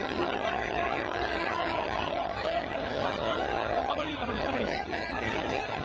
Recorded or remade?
remade